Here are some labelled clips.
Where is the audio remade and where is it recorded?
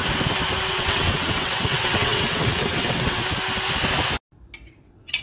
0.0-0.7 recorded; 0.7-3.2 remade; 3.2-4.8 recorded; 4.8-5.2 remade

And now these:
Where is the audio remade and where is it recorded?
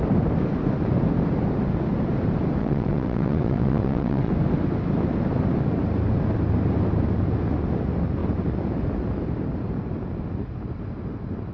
0.0-2.6 recorded; 2.6-4.3 remade; 4.3-11.5 recorded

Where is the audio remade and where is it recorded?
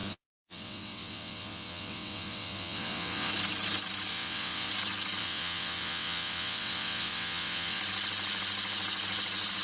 0.0-3.3 remade; 3.3-4.1 recorded; 4.1-4.7 remade; 4.7-5.2 recorded; 5.2-7.8 remade; 7.8-9.6 recorded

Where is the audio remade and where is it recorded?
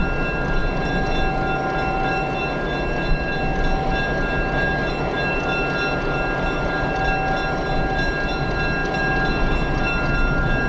0.0-10.7 recorded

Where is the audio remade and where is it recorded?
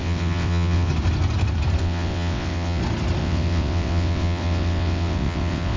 0.0-0.9 remade; 0.9-1.8 recorded; 1.8-2.8 remade; 2.8-3.2 recorded; 3.2-5.8 remade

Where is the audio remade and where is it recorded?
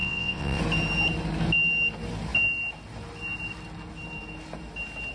0.0-0.6 remade; 0.6-5.1 recorded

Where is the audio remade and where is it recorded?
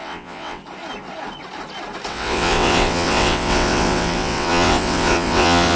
0.0-0.6 remade; 0.6-2.1 recorded; 2.1-5.8 remade